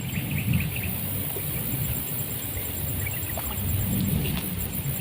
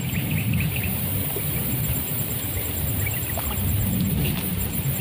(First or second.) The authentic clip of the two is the first